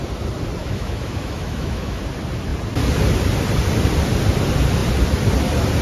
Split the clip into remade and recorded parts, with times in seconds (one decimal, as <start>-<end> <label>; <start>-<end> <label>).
0.0-0.6 recorded; 0.6-2.0 remade; 2.0-5.8 recorded